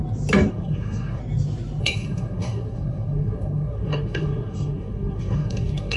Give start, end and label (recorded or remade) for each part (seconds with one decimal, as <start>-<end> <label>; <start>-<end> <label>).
0.0-0.5 recorded; 0.5-1.2 remade; 1.2-1.8 recorded; 1.8-6.0 remade